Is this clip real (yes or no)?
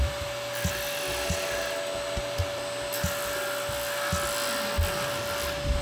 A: yes